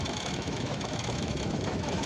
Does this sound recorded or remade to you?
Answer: remade